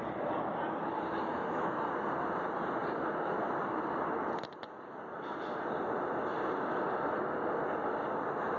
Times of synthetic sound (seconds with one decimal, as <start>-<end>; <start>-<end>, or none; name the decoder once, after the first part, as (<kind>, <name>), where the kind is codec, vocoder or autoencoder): 1.3-1.9 (autoencoder, DAC-VAE)